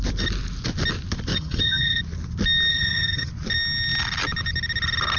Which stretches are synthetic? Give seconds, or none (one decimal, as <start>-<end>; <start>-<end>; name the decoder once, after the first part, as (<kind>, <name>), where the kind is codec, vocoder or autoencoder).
1.3-2.0 (vocoder, HiFi-GAN); 2.7-3.3